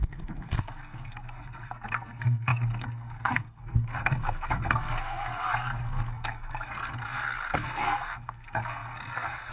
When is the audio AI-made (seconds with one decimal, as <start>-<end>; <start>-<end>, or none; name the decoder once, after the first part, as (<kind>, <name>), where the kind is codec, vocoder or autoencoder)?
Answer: 0.0-9.5 (codec, SNAC)